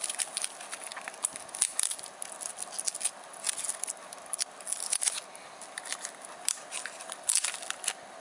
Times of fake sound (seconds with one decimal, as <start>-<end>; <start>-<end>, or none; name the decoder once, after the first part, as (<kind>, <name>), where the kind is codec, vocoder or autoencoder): none